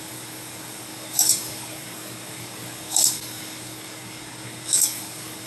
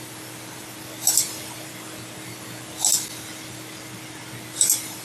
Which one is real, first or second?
second